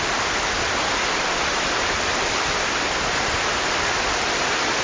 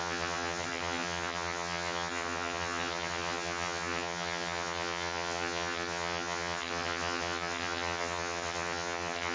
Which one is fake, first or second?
second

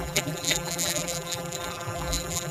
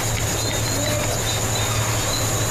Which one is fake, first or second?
first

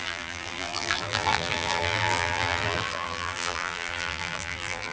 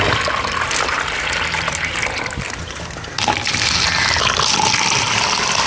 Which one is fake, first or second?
first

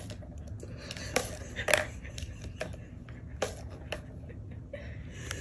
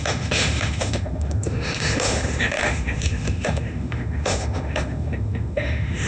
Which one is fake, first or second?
second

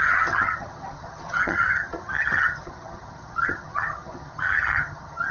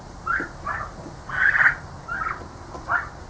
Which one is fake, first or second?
first